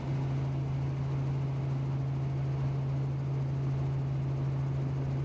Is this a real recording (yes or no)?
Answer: yes